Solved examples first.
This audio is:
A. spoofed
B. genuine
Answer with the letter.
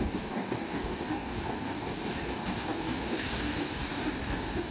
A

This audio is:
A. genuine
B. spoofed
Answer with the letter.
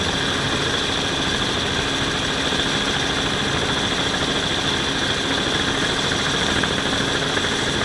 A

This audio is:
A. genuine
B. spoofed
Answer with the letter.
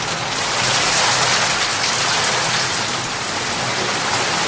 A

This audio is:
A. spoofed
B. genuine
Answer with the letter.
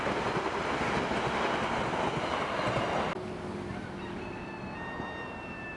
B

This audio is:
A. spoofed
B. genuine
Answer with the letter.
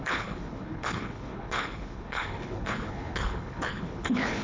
A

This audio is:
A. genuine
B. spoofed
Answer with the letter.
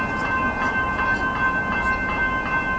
A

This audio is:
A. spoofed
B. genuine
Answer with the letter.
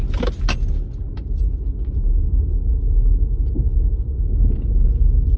B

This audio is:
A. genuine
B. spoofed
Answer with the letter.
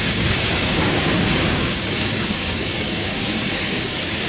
B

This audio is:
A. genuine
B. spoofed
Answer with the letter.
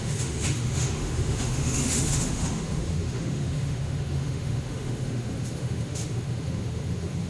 B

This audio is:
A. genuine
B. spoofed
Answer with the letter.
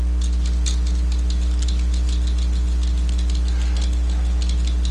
A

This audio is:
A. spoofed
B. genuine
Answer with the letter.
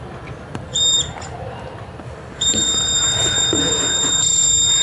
A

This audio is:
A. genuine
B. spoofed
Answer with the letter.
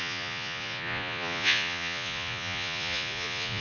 B